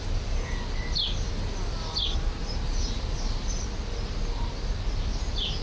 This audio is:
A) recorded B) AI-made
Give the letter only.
A